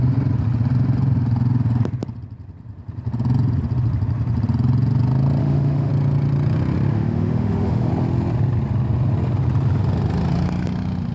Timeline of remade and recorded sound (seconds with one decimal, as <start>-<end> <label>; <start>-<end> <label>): 0.0-5.4 recorded; 5.4-5.9 remade; 5.9-6.9 recorded; 6.9-7.9 remade; 7.9-11.1 recorded